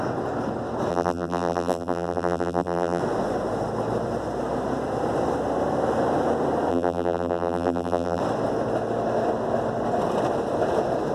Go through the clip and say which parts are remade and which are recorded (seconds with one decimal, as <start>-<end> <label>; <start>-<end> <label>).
0.0-0.9 recorded; 0.9-3.0 remade; 3.0-6.7 recorded; 6.7-8.2 remade; 8.2-11.1 recorded